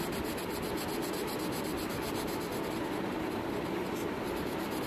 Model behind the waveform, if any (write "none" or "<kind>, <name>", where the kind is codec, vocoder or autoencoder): none